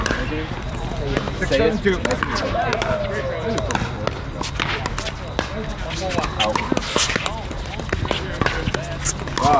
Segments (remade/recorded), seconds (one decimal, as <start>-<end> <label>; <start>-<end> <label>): 0.0-9.6 recorded